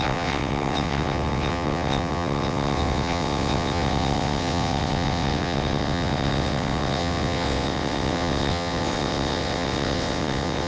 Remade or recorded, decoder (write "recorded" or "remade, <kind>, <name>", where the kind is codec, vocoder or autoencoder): remade, vocoder, WaveNeXt